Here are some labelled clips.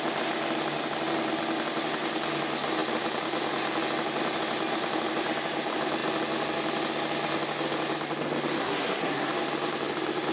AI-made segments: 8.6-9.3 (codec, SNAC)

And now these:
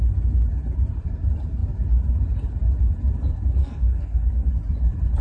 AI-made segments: 3.6-4.5 (codec, SNAC)

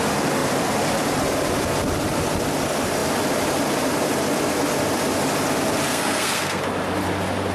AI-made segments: 5.9-6.6 (codec, SNAC)

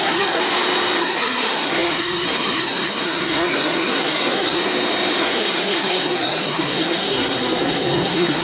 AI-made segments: 0.0-0.4 (codec, SNAC); 1.0-4.6; 5.2-8.4

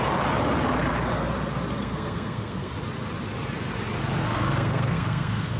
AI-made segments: 1.8-2.7 (codec, SNAC); 4.2-5.6

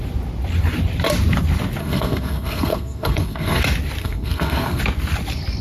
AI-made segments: 1.8-3.6 (codec, SNAC); 4.0-4.8